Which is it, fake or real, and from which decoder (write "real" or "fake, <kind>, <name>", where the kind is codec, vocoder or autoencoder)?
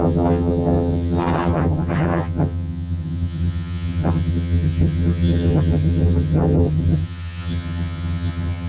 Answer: fake, vocoder, HiFi-GAN